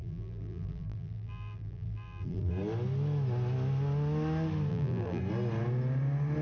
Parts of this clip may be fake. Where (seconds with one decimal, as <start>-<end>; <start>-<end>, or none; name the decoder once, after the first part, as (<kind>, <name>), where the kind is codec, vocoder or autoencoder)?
0.0-2.5 (vocoder, BigVGAN v2); 4.7-5.2